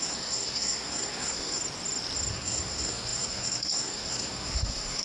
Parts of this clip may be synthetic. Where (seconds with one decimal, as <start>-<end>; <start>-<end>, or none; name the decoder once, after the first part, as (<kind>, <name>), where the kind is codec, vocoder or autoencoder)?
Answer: 0.0-1.6 (codec, SNAC); 2.3-5.0